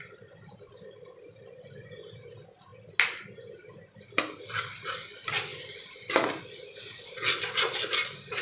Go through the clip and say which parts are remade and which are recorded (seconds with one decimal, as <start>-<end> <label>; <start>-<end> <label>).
0.0-8.4 recorded